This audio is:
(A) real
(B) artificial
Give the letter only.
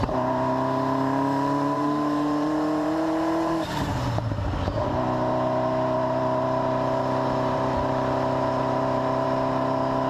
B